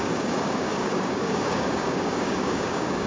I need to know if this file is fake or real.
fake